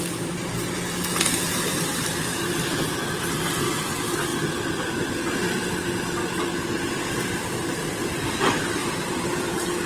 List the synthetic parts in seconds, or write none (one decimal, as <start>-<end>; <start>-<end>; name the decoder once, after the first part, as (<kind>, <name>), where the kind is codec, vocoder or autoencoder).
2.3-3.2 (vocoder, BigVGAN v2); 8.8-9.5